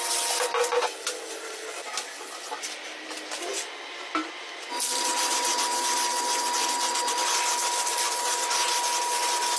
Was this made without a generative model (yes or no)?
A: yes